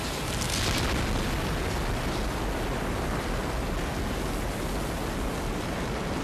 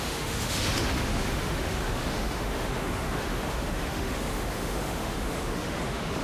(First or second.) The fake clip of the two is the second